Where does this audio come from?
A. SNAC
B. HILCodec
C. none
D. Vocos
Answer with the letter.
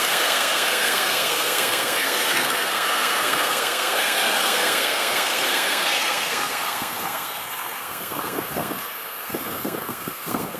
A